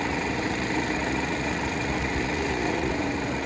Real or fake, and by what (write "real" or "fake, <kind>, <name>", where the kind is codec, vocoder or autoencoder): fake, vocoder, Vocos